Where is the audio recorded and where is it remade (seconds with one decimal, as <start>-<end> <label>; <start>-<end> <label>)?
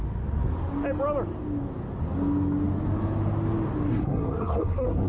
0.0-3.9 recorded; 3.9-5.1 remade